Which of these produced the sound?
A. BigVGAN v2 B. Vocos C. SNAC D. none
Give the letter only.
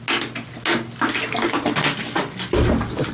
D